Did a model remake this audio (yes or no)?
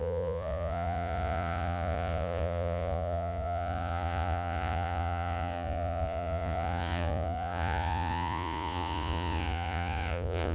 yes